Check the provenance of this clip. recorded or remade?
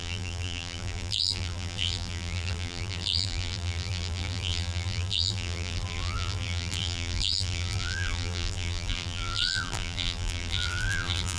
remade